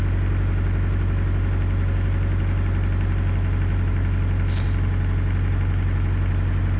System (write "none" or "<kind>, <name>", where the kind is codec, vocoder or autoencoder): none